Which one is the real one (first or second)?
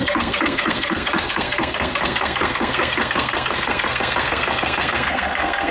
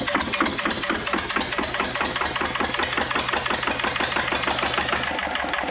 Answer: second